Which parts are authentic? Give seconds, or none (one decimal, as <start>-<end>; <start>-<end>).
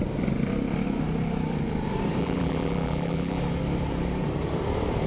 0.0-2.2; 3.4-5.1